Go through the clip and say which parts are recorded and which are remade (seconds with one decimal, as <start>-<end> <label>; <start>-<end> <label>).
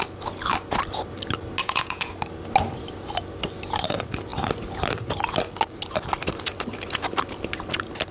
0.0-1.6 recorded; 1.6-2.1 remade; 2.1-8.1 recorded